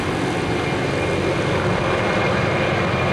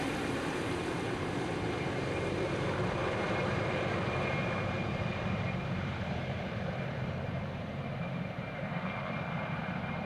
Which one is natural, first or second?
first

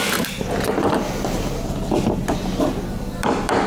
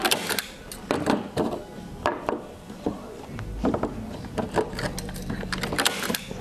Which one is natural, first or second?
second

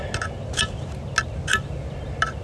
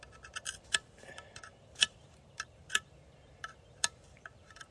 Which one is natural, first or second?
first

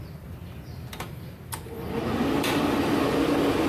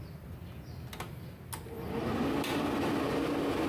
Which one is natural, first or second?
second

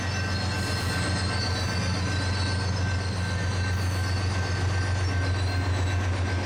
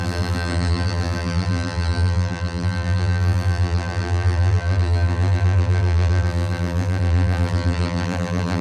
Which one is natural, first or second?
first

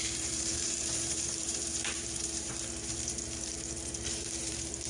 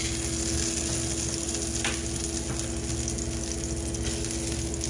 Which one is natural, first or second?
second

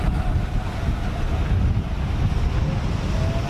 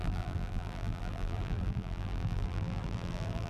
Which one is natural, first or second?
first